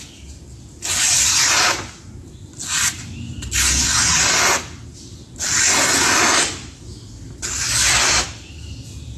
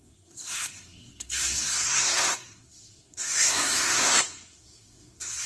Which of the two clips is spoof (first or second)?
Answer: second